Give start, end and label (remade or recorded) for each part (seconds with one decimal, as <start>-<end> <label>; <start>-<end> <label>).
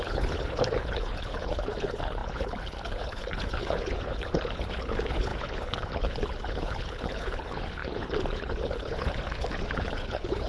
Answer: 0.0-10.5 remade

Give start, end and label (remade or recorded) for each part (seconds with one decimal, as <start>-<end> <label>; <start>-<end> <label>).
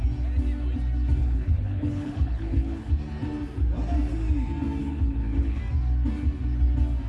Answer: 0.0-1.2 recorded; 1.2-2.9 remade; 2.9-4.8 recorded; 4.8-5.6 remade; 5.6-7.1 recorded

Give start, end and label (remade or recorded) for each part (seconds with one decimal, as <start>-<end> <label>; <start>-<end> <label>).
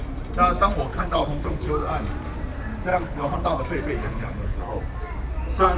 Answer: 0.0-0.9 recorded; 0.9-1.7 remade; 1.7-2.9 recorded; 2.9-3.6 remade; 3.6-4.0 recorded; 4.0-4.8 remade; 4.8-5.8 recorded